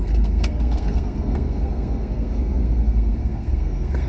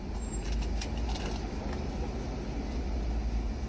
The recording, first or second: second